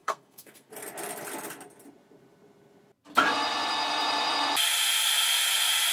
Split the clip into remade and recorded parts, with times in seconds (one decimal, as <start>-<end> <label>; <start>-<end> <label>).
0.0-0.7 remade; 0.7-5.9 recorded